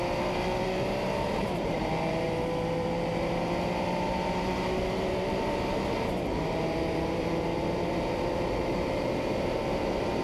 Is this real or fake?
fake